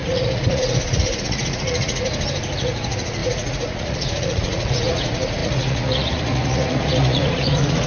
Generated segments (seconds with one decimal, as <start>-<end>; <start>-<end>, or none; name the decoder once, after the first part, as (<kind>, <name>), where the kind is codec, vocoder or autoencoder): 0.0-2.1 (vocoder, Vocos); 2.6-7.9

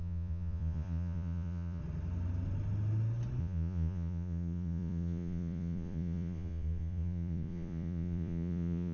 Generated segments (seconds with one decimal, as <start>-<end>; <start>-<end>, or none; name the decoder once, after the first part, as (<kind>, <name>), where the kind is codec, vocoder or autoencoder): 0.0-1.8 (vocoder, Vocos); 3.4-8.9

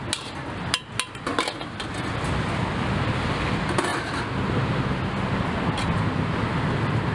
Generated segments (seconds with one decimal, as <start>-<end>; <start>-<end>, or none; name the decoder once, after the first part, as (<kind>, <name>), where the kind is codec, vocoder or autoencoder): none

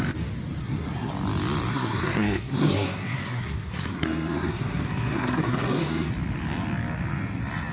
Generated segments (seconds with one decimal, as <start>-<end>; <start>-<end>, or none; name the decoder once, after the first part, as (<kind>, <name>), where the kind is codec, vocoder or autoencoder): 0.6-1.1 (codec, SNAC); 1.7-6.1

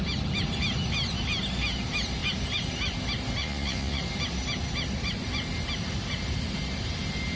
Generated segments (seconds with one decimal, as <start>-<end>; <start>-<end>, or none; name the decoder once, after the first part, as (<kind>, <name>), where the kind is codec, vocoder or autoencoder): 3.4-4.0 (vocoder, Vocos)